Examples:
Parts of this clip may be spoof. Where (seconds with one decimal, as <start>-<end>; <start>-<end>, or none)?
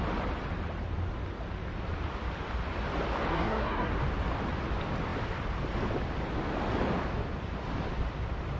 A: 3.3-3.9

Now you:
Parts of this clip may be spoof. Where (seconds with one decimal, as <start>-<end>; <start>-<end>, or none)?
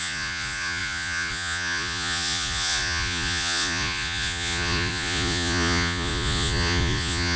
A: 0.0-7.4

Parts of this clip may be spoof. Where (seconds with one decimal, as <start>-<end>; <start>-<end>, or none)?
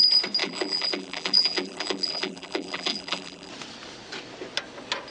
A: 0.4-3.5